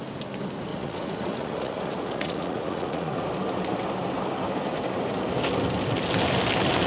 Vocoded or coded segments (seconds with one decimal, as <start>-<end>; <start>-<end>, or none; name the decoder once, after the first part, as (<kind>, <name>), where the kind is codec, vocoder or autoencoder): 0.7-3.2 (vocoder, Vocos)